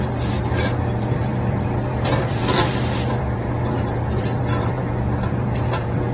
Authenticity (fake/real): fake